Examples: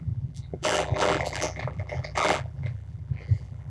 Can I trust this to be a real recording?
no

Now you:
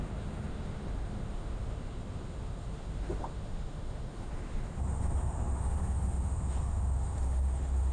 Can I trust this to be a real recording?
no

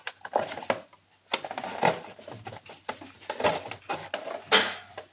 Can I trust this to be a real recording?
yes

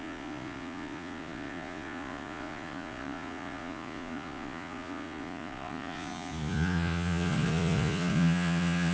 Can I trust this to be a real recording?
no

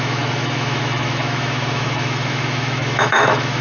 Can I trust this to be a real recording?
no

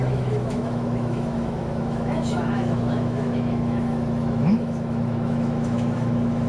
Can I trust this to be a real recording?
no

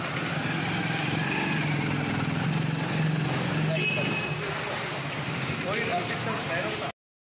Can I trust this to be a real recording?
yes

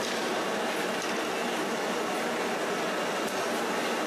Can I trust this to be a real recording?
yes